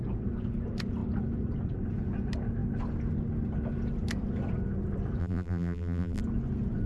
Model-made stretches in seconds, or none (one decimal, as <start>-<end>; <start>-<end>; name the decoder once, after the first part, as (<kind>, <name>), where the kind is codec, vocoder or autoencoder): 5.2-6.2 (vocoder, BigVGAN v2)